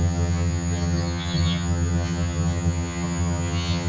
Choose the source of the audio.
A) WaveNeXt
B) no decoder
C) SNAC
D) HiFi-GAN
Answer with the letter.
D